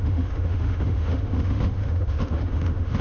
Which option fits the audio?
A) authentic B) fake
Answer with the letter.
B